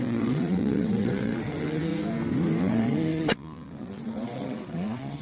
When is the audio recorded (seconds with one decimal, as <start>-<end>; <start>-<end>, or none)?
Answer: 1.9-2.6

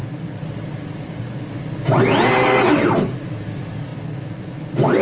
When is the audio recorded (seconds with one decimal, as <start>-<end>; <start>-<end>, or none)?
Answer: 0.0-5.0

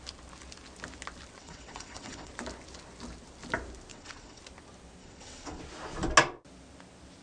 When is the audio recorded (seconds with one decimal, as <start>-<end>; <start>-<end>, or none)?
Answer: 0.0-1.4; 2.3-3.9; 4.4-5.0; 5.6-7.2